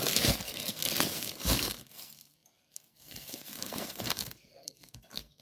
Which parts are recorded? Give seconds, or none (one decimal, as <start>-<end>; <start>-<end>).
none